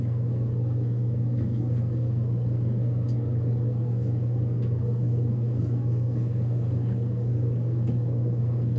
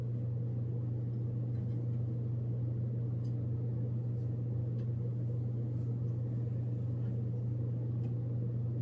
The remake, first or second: first